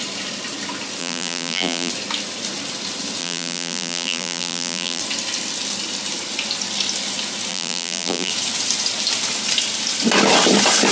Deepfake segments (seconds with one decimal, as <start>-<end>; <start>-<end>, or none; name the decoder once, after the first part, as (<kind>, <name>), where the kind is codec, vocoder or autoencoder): 1.0-1.9 (vocoder, BigVGAN v2); 3.2-5.0; 7.5-8.3